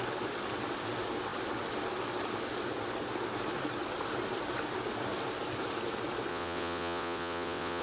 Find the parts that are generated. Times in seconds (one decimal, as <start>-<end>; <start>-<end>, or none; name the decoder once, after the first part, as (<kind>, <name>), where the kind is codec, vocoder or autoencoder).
6.3-7.8 (vocoder, WaveNeXt)